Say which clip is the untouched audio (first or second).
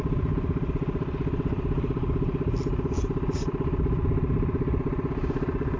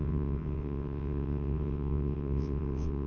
first